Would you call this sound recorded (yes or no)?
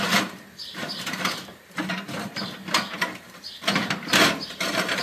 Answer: no